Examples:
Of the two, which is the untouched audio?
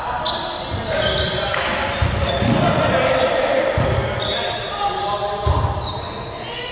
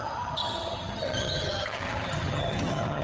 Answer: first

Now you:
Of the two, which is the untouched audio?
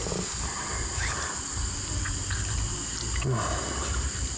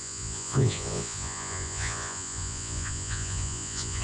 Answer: first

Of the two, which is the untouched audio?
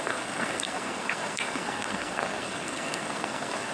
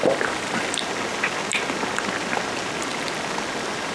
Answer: second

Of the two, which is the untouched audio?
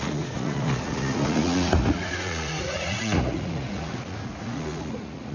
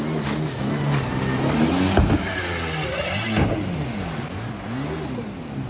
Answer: second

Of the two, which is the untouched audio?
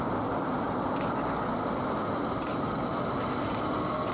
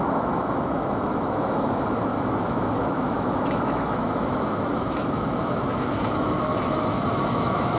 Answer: first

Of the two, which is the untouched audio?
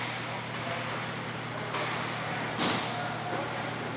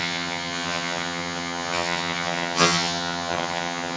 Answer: first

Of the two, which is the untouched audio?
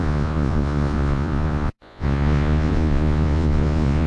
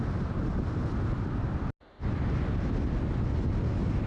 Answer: second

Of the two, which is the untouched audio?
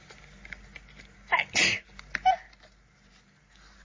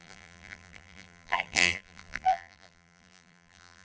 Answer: first